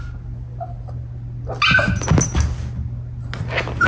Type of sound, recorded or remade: recorded